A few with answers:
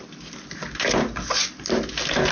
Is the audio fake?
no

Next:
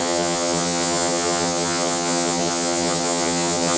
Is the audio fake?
yes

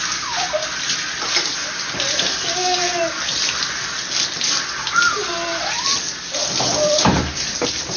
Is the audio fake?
no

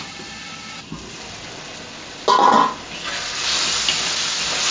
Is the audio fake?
no